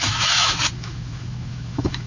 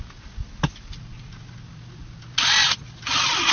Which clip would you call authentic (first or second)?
second